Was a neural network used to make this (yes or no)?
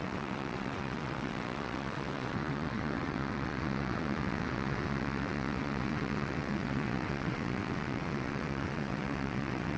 yes